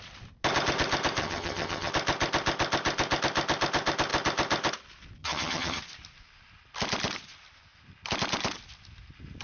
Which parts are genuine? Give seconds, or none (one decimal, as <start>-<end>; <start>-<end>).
0.0-1.2; 1.9-5.2; 5.8-9.4